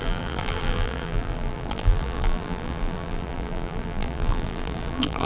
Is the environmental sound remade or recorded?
remade